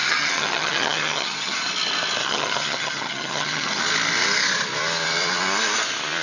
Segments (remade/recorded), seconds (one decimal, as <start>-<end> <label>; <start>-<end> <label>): 0.0-1.7 remade; 1.7-2.2 recorded; 2.2-3.8 remade; 3.8-6.2 recorded